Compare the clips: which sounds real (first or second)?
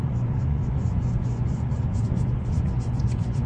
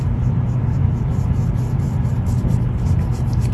second